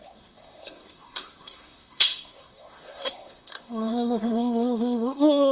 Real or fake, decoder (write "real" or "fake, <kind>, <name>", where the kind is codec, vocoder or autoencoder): fake, codec, SNAC